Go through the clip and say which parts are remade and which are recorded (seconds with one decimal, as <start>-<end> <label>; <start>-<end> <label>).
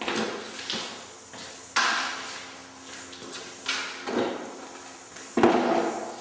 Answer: 0.0-6.2 recorded